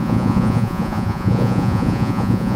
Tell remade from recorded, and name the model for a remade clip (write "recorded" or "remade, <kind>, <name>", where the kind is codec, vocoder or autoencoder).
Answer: remade, vocoder, Vocos